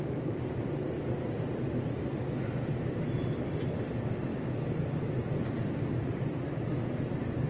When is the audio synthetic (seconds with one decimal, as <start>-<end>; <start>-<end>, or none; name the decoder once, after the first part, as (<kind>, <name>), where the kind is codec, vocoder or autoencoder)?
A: 0.0-7.5 (vocoder, BigVGAN v2)